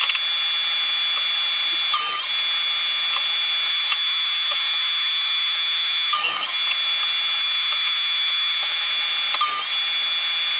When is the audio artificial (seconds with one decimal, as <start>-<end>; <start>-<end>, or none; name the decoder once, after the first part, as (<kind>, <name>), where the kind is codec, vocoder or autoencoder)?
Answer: 3.7-6.6 (autoencoder, DAC-VAE); 7.4-8.9